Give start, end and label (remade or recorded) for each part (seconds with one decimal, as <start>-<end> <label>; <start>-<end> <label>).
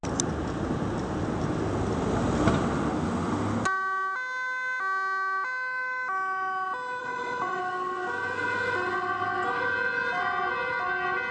0.0-7.0 recorded; 7.0-7.6 remade; 7.6-11.3 recorded